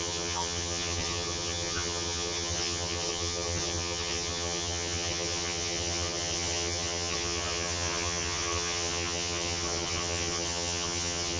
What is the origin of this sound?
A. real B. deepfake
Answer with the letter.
B